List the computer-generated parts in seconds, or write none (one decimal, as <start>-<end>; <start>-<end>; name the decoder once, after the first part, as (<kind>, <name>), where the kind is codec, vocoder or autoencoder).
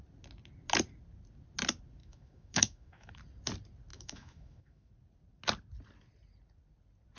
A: 2.0-3.1 (autoencoder, DAC-VAE); 3.9-4.9